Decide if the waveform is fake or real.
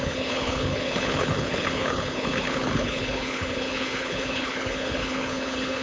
fake